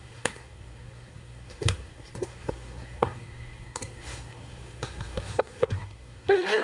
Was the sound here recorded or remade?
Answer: remade